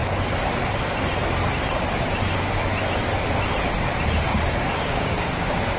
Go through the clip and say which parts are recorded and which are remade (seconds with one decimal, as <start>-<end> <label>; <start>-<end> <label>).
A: 0.0-4.3 recorded; 4.3-5.3 remade; 5.3-5.8 recorded